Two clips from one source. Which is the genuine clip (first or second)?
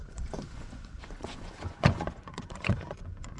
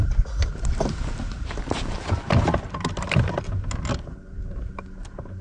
second